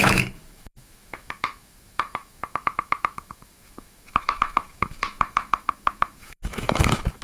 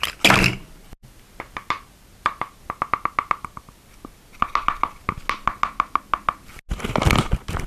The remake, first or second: first